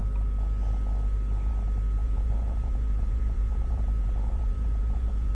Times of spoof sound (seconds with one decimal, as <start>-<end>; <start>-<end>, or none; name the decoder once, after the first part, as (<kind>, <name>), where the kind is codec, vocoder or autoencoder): 2.0-5.3 (vocoder, Vocos)